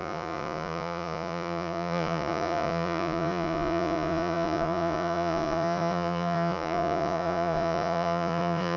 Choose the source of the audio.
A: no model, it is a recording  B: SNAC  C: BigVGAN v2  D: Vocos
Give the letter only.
D